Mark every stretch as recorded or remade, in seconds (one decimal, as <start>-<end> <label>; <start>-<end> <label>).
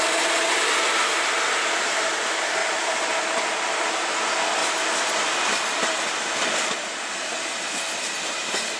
0.0-8.8 recorded